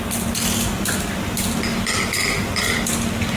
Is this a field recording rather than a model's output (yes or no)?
yes